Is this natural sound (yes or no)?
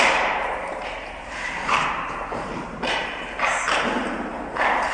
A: no